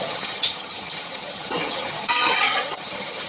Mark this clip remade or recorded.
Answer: remade